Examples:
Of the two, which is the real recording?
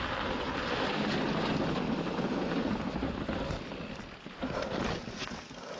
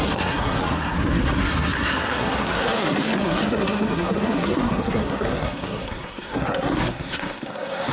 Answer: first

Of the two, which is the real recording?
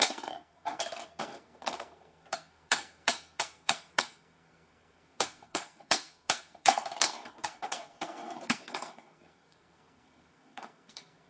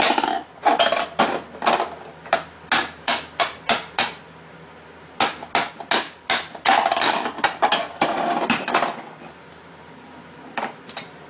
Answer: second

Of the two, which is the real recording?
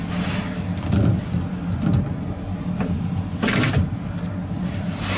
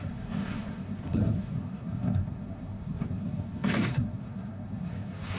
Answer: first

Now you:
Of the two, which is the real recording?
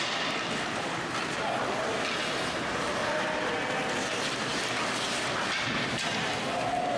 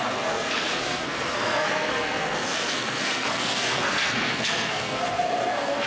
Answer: first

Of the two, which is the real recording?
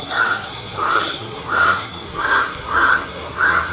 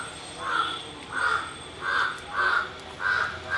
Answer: second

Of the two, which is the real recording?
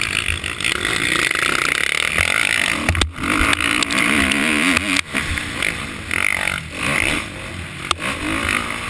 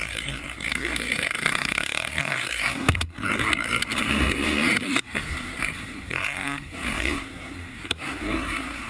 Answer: first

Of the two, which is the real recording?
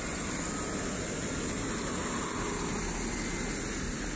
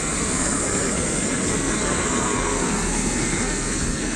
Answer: first